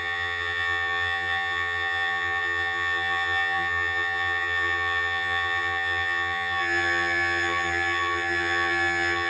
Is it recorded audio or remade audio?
remade